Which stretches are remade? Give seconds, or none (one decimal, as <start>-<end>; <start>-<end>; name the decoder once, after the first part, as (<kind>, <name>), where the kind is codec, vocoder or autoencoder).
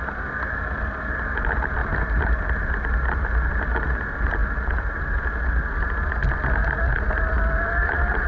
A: 1.8-2.4 (vocoder, BigVGAN v2)